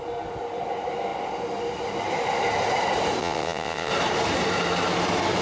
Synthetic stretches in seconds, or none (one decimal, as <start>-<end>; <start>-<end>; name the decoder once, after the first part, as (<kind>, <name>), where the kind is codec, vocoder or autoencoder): 3.2-3.9 (vocoder, WaveNeXt)